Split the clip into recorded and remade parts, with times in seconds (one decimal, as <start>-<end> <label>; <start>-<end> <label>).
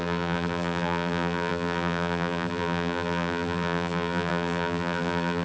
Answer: 0.0-5.4 remade